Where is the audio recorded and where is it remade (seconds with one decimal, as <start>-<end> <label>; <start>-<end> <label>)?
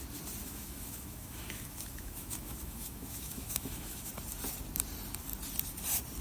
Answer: 0.0-0.4 recorded; 0.4-4.1 remade; 4.1-6.2 recorded